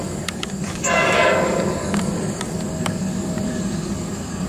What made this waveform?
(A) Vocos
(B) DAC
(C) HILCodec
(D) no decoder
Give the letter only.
B